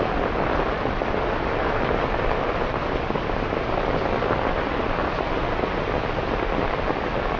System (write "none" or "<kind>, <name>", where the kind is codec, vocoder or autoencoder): none